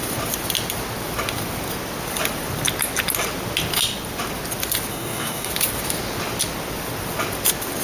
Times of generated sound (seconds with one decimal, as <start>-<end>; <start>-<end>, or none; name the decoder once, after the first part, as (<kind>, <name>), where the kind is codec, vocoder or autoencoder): 4.9-5.5 (codec, DAC)